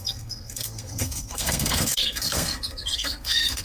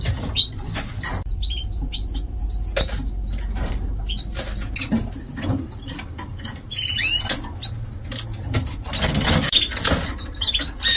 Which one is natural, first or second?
second